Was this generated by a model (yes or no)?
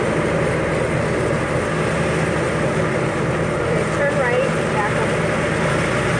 no